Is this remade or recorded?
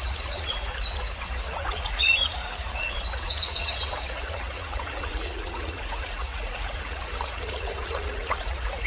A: remade